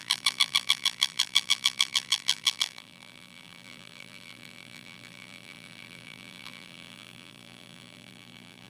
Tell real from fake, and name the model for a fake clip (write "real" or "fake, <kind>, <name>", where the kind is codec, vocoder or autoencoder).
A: fake, vocoder, BigVGAN v2